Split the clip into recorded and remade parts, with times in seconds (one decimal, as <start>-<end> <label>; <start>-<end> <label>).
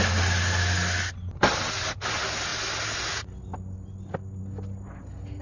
0.0-5.4 recorded